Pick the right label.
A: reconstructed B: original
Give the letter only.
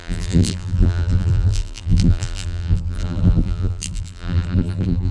A